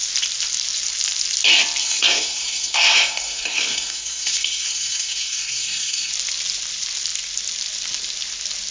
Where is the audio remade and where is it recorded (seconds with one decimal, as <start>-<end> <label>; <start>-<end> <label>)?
0.0-1.8 recorded; 1.8-6.1 remade; 6.1-8.7 recorded